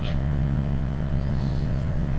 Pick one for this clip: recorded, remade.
remade